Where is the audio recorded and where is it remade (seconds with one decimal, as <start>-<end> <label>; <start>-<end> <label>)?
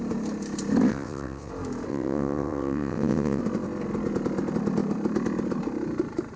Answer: 0.0-0.9 recorded; 0.9-1.5 remade; 1.5-1.9 recorded; 1.9-3.4 remade; 3.4-6.4 recorded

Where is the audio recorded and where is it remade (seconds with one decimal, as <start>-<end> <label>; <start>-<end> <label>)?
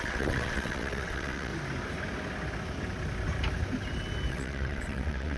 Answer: 0.0-1.5 remade; 1.5-4.3 recorded; 4.3-5.4 remade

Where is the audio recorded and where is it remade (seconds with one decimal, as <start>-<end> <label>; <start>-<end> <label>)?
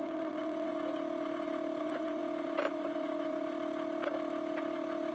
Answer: 0.0-0.7 remade; 0.7-1.8 recorded; 1.8-2.2 remade; 2.2-5.1 recorded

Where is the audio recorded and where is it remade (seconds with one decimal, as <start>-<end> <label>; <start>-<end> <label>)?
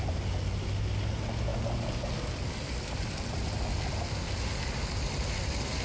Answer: 0.0-5.8 recorded